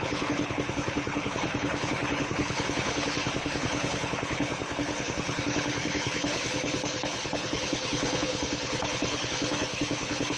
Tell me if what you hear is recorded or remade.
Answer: remade